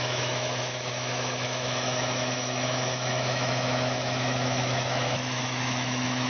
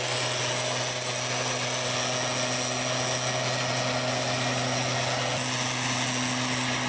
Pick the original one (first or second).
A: second